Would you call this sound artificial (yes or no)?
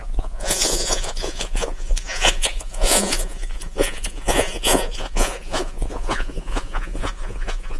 yes